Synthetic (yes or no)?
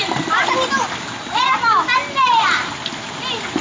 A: no